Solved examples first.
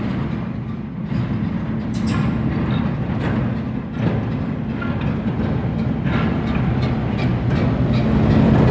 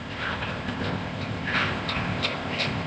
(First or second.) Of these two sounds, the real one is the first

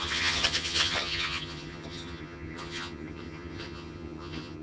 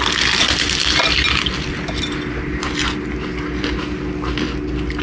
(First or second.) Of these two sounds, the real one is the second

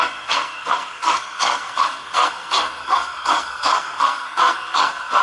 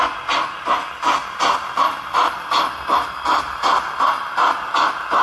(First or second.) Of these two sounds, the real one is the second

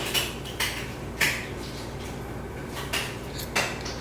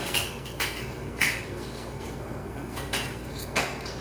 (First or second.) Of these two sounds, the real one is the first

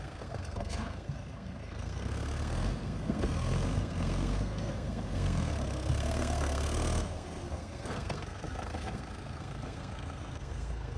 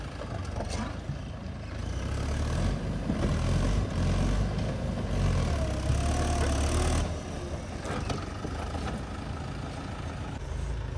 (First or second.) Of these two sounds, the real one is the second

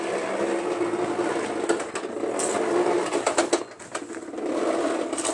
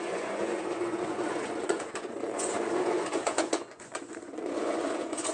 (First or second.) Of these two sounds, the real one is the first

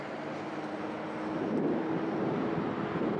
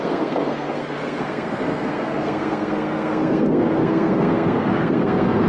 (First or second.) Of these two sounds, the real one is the first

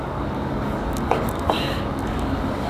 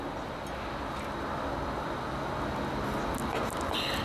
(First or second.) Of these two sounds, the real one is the second